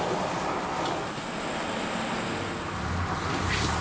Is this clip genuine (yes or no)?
yes